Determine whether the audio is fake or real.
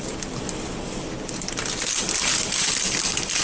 real